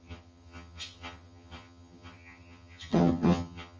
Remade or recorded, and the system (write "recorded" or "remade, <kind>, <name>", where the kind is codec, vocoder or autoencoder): remade, vocoder, HiFi-GAN